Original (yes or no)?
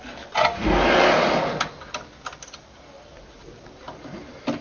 yes